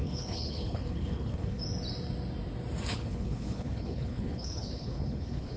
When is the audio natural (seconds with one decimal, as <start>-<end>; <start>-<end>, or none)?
1.6-2.9